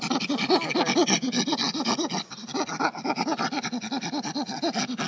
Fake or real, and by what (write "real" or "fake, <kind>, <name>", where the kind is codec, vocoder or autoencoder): real